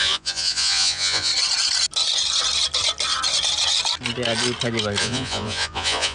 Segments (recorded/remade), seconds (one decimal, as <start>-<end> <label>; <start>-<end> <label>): 0.0-1.3 remade; 1.3-5.0 recorded; 5.0-6.1 remade